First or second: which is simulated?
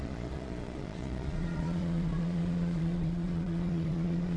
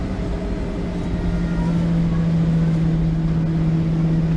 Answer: first